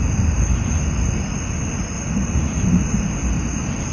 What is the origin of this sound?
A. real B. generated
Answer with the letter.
A